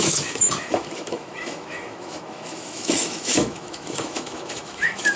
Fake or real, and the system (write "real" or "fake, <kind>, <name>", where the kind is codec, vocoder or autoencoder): fake, autoencoder, DAC-VAE